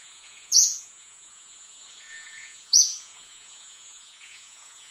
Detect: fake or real fake